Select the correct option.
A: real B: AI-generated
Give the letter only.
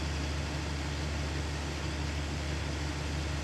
A